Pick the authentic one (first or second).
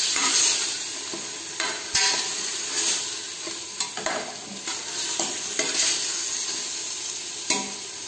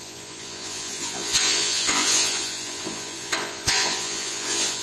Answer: first